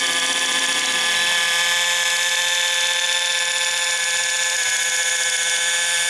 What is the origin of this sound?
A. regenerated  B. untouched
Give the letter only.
B